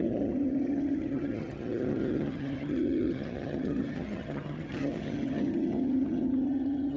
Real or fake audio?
fake